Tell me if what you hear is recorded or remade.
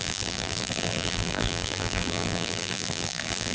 remade